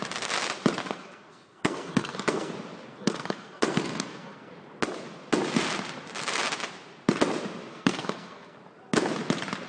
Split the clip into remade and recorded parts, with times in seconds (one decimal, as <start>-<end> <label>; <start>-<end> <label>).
0.0-0.8 recorded; 0.8-2.5 remade; 2.5-2.9 recorded; 2.9-4.5 remade; 4.5-7.7 recorded; 7.7-8.6 remade; 8.6-9.7 recorded